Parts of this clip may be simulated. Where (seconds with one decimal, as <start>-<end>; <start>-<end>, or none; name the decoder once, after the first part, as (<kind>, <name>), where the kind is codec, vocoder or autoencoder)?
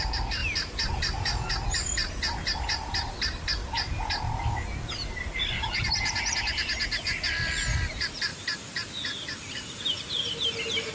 none